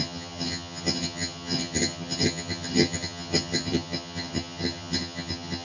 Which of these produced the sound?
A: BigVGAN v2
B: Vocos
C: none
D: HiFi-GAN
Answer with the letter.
D